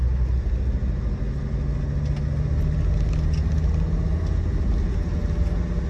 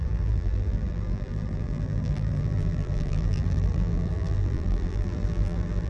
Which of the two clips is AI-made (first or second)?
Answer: second